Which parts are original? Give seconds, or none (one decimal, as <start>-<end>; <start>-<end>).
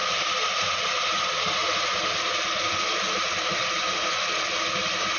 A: 0.0-5.2